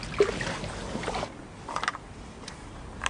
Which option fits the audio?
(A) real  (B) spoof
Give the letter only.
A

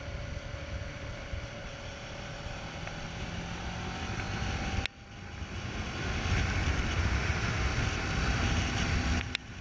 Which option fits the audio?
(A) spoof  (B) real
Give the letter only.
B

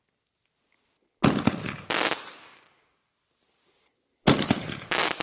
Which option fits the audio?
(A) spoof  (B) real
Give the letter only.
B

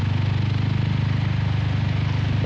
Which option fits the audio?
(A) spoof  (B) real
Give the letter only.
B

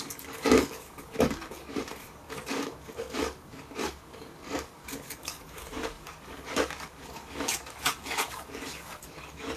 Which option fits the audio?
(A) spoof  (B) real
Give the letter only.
A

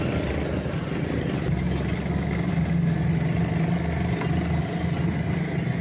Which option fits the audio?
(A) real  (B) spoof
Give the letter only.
A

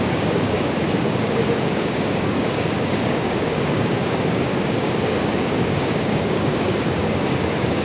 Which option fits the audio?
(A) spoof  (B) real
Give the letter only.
A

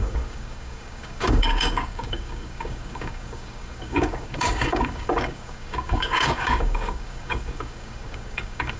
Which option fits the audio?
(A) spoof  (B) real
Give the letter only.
A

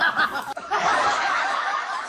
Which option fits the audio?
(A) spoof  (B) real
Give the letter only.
A